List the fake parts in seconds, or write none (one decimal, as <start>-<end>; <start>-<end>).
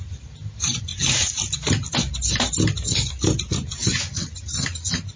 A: none